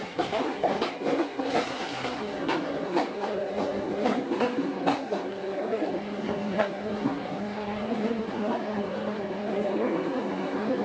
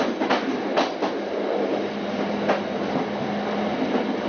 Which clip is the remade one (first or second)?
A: first